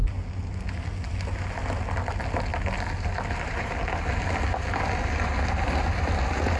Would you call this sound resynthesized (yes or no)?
no